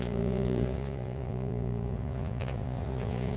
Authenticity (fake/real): fake